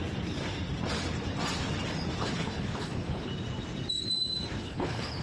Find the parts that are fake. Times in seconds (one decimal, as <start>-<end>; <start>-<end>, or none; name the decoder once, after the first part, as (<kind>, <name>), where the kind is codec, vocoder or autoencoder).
2.2-3.3 (codec, HILCodec); 4.6-5.2